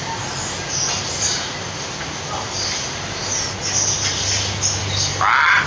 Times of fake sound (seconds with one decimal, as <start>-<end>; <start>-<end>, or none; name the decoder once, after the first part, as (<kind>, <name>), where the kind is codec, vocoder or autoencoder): none